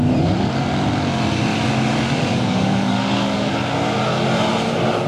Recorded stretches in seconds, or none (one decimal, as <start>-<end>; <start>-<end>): 0.0-1.5; 3.5-5.1